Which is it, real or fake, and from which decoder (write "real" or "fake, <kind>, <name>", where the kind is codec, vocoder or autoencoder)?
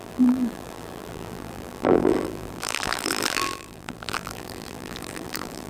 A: fake, vocoder, BigVGAN v2